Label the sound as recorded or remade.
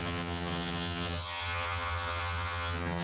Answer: remade